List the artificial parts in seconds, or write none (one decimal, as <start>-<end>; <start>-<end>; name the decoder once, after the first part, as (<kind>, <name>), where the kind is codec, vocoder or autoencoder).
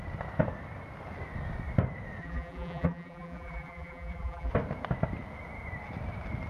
2.2-4.5 (vocoder, BigVGAN v2)